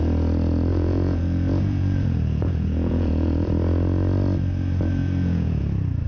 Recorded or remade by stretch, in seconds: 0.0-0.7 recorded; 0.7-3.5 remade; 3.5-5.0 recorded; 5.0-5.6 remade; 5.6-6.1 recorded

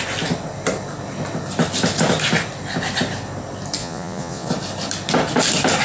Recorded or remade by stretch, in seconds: 0.0-3.8 recorded; 3.8-4.5 remade; 4.5-5.8 recorded